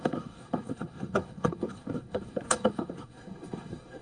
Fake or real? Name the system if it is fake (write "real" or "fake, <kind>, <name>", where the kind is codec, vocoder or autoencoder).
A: fake, codec, SNAC